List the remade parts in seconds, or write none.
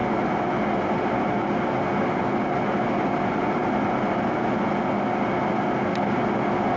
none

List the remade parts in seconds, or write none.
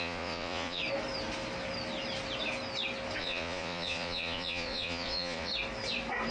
0.0-0.8 (vocoder, Vocos); 3.2-5.5